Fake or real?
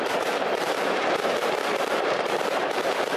fake